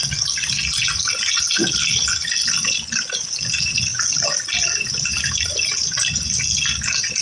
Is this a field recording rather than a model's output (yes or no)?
yes